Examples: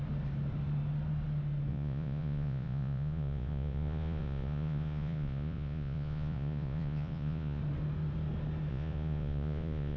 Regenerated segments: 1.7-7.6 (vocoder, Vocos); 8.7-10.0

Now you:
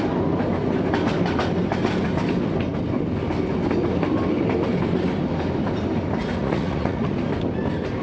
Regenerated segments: 6.4-7.1 (vocoder, Vocos)

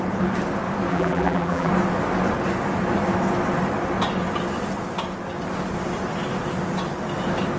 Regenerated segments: 0.9-1.7 (vocoder, BigVGAN v2)

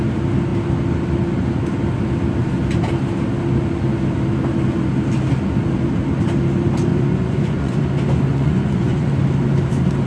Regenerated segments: 6.9-7.8 (vocoder, Vocos); 8.3-9.1

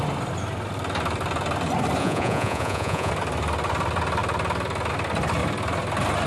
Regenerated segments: 2.0-3.1 (vocoder, Vocos)

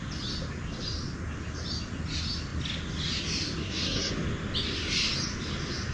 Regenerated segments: 3.6-4.1 (codec, SNAC)

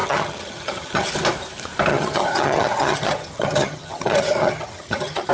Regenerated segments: 0.0-1.1 (vocoder, HiFi-GAN); 1.9-5.3

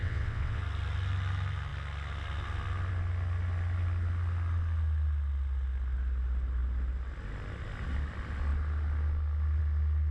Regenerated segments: 0.0-0.6 (vocoder, WaveNeXt)